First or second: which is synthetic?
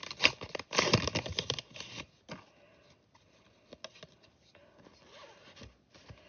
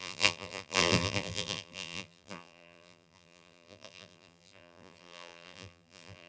second